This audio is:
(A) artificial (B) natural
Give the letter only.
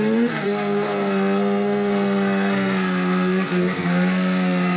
A